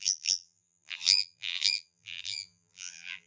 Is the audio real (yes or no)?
no